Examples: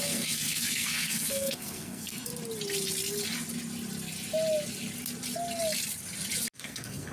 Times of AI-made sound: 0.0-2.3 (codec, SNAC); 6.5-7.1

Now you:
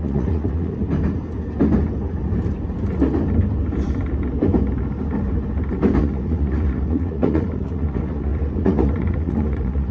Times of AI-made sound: 0.0-0.8 (vocoder, Vocos); 6.0-9.9